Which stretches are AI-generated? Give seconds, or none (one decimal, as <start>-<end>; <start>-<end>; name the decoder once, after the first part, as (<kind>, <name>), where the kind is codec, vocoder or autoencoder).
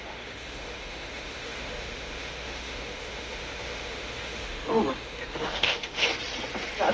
0.0-6.1 (autoencoder, DAC-VAE)